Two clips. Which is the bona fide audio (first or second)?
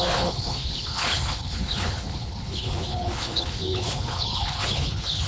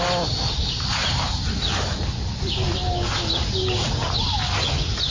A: second